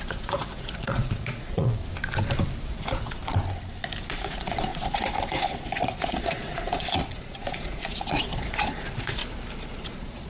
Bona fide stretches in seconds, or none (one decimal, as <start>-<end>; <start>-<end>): 1.8-2.7; 3.2-4.1; 9.2-9.8